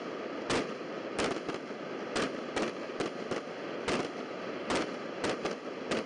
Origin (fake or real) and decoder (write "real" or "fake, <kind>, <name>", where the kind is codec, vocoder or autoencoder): real